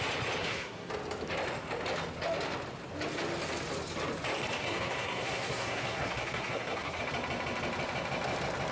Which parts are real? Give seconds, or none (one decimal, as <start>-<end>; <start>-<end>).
0.0-0.4; 0.9-4.6; 7.0-8.7